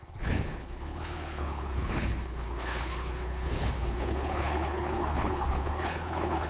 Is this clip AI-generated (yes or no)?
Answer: yes